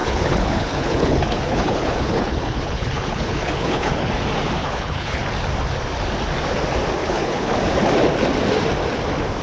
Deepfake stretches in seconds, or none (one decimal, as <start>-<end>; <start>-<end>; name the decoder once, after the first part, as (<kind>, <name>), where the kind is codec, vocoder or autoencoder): 0.0-4.1 (codec, HILCodec); 4.6-5.2; 7.0-7.5